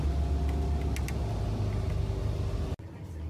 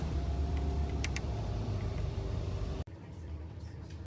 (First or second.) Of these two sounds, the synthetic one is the second